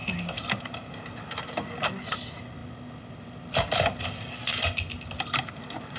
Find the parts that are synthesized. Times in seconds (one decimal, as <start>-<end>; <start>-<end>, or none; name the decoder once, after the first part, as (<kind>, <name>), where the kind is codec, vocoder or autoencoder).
none